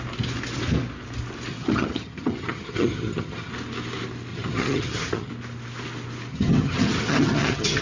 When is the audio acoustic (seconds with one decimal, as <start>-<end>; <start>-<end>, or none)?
0.0-1.5; 3.5-4.3; 5.3-6.3